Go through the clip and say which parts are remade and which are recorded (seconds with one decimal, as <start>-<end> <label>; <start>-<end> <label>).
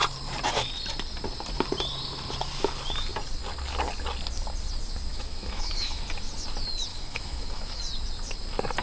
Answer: 0.0-5.1 recorded; 5.1-6.0 remade; 6.0-6.9 recorded; 6.9-7.8 remade; 7.8-8.8 recorded